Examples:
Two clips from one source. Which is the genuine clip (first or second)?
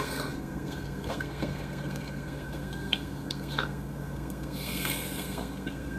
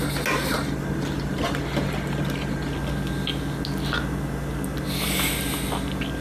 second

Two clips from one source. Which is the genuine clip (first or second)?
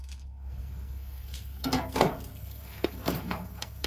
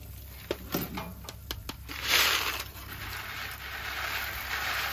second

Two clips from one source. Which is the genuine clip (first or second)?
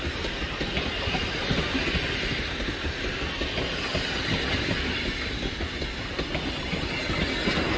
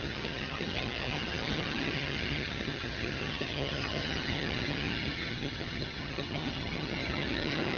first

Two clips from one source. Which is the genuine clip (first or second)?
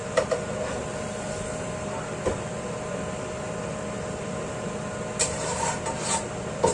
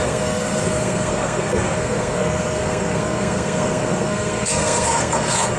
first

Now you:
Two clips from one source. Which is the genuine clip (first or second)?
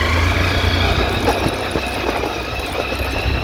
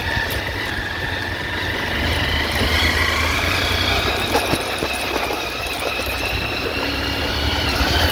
first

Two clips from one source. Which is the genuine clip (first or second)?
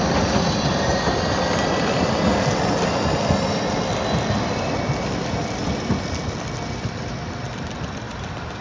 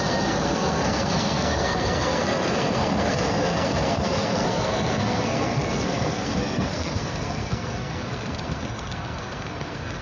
first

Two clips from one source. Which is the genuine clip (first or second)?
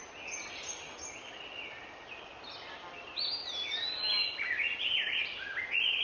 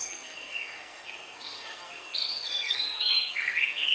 first